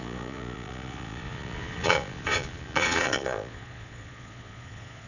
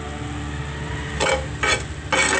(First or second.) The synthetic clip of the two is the first